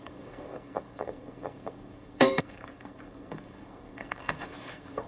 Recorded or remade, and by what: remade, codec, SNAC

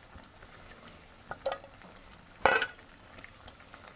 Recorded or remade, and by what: recorded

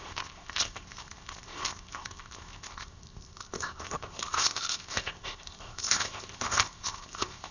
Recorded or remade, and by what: remade, codec, ZipCodec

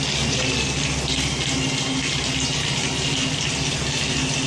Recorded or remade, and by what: recorded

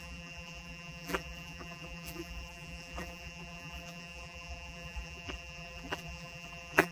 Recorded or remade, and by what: remade, vocoder, BigVGAN v2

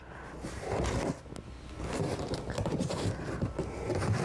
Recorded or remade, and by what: recorded